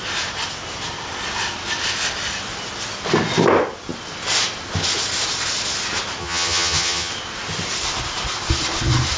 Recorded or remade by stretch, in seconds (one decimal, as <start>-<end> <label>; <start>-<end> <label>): 0.0-6.2 recorded; 6.2-7.1 remade; 7.1-9.2 recorded